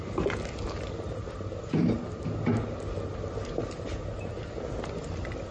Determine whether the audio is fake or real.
real